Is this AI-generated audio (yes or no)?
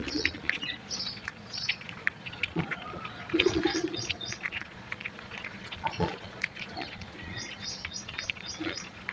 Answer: yes